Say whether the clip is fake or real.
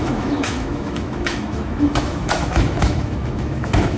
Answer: fake